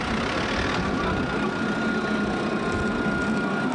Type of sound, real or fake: real